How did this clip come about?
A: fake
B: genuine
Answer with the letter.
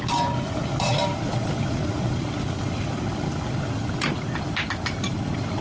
B